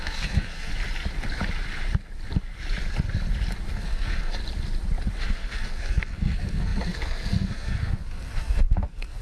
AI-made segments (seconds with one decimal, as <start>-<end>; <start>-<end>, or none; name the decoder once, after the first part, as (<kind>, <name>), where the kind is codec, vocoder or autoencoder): 0.0-0.7 (codec, SNAC); 3.7-4.3; 5.2-9.2